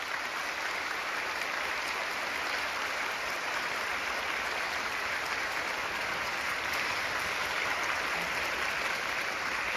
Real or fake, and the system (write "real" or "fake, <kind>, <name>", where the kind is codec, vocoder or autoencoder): fake, vocoder, BigVGAN v2